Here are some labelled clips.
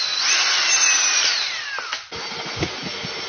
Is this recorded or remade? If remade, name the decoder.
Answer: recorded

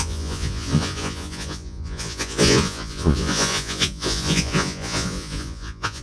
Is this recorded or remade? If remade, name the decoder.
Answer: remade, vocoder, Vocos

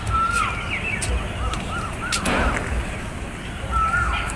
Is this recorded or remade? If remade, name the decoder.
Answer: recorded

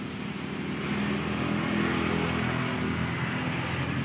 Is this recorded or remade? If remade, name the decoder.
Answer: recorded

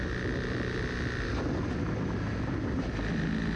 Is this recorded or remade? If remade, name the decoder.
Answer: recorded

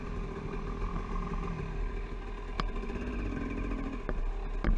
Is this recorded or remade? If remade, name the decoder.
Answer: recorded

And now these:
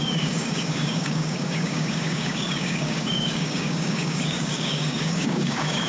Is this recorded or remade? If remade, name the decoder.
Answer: remade, codec, DAC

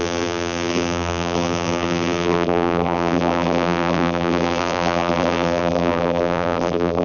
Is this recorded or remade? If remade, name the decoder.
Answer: remade, vocoder, BigVGAN v2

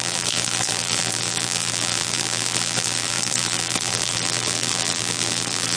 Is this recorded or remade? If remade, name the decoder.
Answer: remade, vocoder, BigVGAN v2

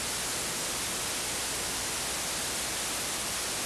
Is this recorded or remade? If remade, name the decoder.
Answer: recorded